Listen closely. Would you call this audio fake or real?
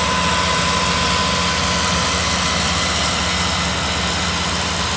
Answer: real